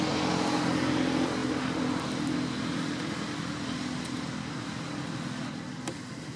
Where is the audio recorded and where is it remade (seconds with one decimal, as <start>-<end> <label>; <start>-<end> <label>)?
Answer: 0.0-1.4 recorded; 1.4-5.2 remade; 5.2-6.4 recorded